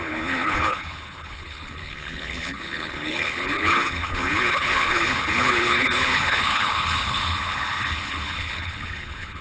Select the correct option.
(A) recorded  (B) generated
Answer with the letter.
B